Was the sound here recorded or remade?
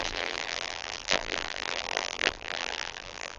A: remade